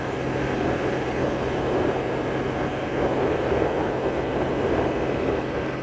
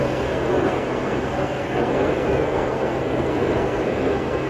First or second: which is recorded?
first